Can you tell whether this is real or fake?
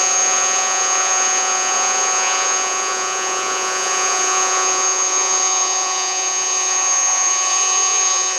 fake